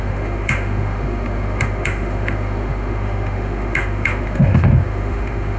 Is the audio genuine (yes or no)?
no